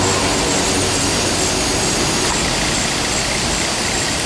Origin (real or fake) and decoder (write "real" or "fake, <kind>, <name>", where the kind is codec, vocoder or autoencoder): real